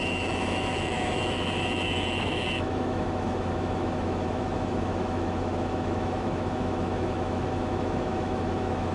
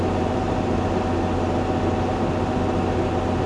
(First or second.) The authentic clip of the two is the second